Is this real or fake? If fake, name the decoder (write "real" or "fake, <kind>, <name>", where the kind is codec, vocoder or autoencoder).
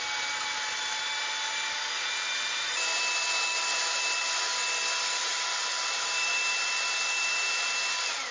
real